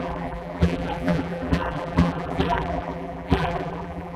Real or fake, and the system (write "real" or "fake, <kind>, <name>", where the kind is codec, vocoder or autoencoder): fake, vocoder, BigVGAN v2